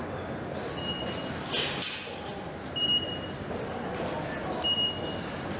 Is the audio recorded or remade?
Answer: recorded